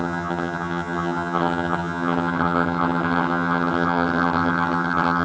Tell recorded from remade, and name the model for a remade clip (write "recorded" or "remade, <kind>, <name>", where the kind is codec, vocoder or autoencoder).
remade, vocoder, HiFi-GAN